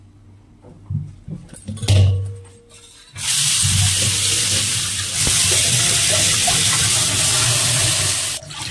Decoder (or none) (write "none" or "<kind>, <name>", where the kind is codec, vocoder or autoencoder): none